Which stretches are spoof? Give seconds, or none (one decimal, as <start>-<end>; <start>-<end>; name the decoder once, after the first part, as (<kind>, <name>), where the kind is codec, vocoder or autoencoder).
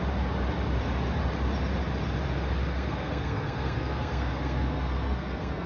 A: 2.7-5.7 (codec, SNAC)